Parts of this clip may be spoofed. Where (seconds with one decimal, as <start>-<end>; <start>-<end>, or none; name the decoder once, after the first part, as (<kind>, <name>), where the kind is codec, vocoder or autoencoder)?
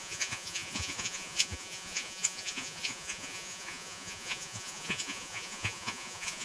0.0-6.4 (vocoder, Vocos)